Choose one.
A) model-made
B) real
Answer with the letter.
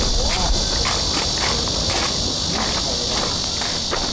B